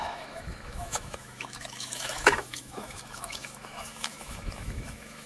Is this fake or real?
fake